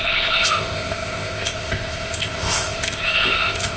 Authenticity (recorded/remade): remade